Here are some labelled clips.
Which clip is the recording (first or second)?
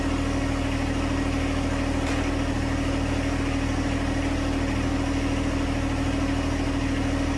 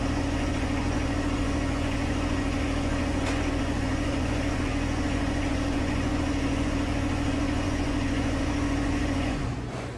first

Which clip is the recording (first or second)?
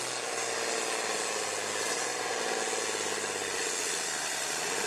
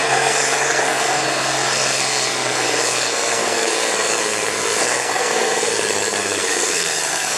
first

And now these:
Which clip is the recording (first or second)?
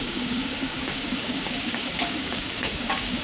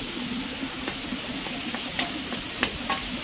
second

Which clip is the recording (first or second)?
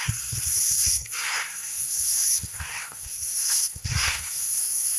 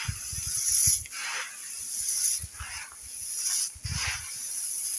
second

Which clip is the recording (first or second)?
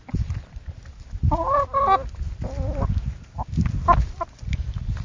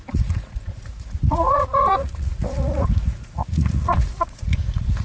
first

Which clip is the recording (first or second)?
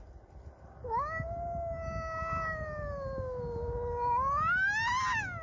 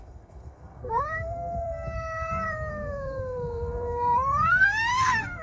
first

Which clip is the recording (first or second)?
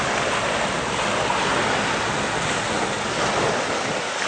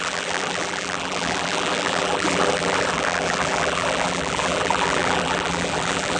first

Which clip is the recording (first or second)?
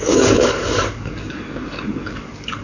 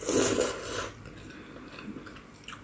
second